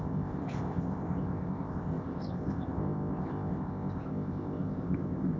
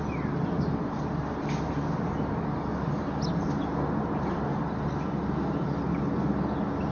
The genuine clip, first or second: second